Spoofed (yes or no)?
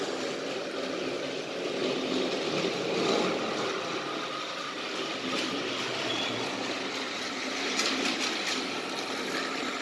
no